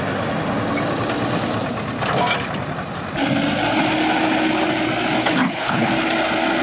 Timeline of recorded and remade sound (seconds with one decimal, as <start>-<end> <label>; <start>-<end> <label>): 0.0-5.2 recorded; 5.2-5.9 remade; 5.9-6.6 recorded